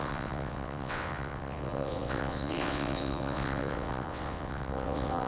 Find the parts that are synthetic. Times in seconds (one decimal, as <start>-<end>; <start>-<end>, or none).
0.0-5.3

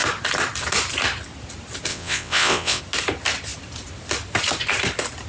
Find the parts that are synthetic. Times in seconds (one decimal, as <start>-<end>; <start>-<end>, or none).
1.9-2.8

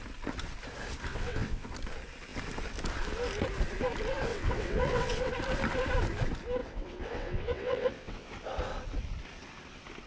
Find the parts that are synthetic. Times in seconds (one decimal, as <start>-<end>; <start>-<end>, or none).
1.1-1.7; 4.3-5.3; 6.6-8.3

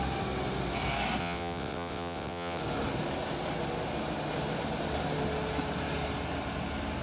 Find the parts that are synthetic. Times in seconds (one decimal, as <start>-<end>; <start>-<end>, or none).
1.2-2.6

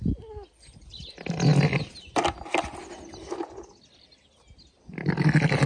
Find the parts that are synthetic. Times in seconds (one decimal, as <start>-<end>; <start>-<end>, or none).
none

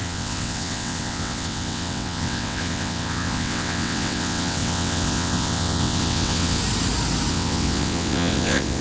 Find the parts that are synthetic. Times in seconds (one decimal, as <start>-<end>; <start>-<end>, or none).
0.0-6.6; 7.3-8.8

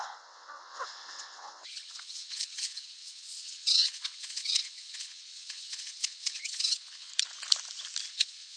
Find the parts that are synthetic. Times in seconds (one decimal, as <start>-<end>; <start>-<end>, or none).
0.0-7.1; 8.1-8.6

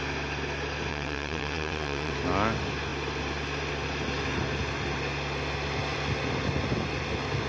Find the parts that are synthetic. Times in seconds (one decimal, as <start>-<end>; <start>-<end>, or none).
0.9-2.1